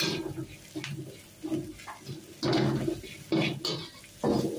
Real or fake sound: real